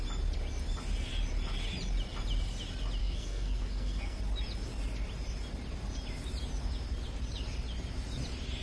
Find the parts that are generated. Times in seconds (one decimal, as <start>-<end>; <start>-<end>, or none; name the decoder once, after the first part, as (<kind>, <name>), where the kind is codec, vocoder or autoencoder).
3.0-4.2 (codec, SNAC)